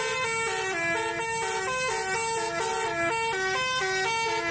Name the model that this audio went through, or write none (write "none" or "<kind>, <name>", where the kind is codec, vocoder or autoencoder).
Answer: none